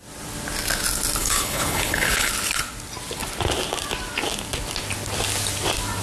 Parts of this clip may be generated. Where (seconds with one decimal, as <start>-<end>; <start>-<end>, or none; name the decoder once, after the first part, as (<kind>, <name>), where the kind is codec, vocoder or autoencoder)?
1.2-2.3 (codec, HILCodec)